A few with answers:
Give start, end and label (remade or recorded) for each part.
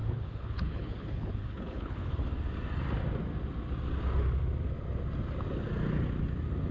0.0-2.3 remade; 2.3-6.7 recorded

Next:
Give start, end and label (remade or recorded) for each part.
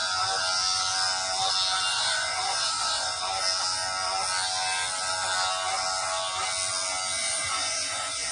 0.0-1.9 recorded; 1.9-3.2 remade; 3.2-7.2 recorded; 7.2-8.3 remade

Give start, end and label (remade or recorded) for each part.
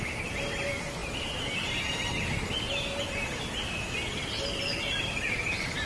0.0-5.9 recorded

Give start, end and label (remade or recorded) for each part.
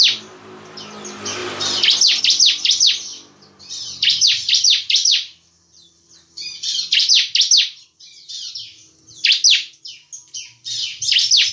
0.0-1.4 recorded; 1.4-2.2 remade; 2.2-3.1 recorded; 3.1-7.1 remade; 7.1-10.2 recorded; 10.2-11.5 remade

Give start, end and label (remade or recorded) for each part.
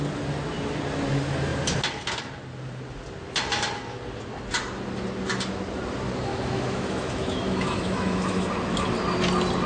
0.0-6.3 recorded; 6.3-8.5 remade; 8.5-9.7 recorded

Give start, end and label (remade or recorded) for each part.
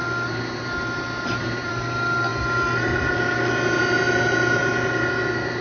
0.0-5.6 recorded